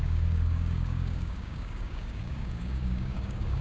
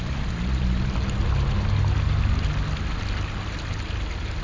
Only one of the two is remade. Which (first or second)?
first